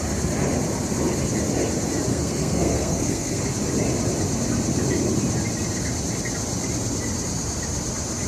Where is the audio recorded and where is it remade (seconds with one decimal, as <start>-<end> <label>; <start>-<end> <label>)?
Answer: 0.0-2.1 recorded; 2.1-3.4 remade; 3.4-8.3 recorded